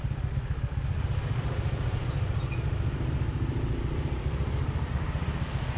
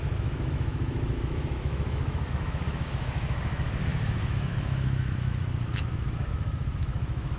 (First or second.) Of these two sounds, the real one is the first